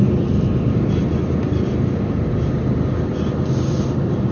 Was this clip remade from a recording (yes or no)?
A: no